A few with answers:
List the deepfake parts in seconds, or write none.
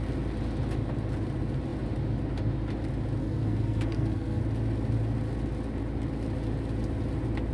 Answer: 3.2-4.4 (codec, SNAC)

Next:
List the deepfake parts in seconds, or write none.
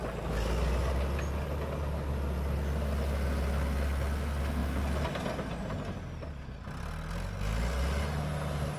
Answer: none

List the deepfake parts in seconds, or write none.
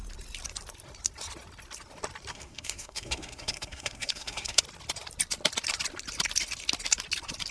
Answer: 2.3-4.6 (codec, SNAC)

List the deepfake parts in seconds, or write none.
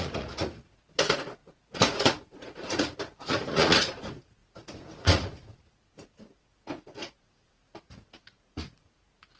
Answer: 0.0-9.4 (vocoder, Vocos)